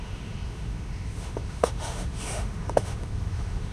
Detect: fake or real fake